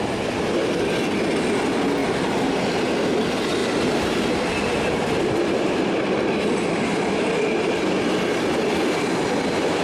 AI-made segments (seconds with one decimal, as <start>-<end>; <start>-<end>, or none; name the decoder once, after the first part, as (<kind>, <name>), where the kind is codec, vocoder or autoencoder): 3.6-6.3 (vocoder, BigVGAN v2)